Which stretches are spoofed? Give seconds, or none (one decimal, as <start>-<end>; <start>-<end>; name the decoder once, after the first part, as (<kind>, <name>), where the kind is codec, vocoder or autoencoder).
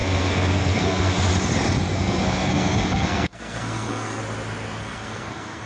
0.0-1.3 (codec, SNAC); 1.9-4.2; 4.8-5.7